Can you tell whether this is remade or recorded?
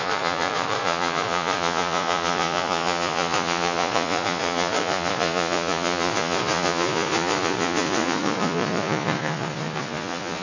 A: remade